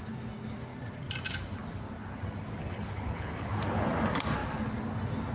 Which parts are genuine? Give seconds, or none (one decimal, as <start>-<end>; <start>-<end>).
0.0-2.6; 3.5-5.3